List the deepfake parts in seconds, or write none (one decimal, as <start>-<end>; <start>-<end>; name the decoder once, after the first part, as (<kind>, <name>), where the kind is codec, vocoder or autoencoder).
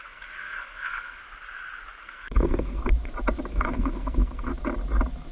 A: 0.0-1.2 (codec, SNAC); 2.0-2.8; 3.5-4.5